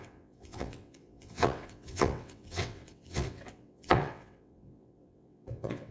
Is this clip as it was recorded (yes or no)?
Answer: no